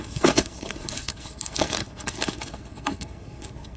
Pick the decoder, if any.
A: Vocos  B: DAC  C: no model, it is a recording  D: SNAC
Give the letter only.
D